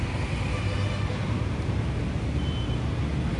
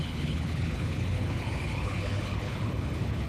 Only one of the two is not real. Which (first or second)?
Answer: second